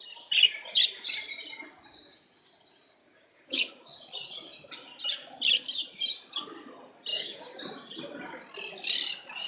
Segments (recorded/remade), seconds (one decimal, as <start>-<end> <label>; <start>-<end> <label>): 0.0-3.0 recorded; 3.0-3.7 remade; 3.7-7.1 recorded; 7.1-7.6 remade; 7.6-9.5 recorded